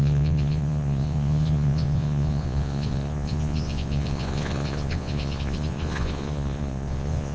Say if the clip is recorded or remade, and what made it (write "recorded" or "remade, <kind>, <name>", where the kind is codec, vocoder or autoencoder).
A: remade, vocoder, Vocos